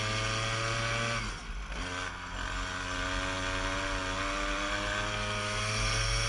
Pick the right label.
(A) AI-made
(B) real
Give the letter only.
B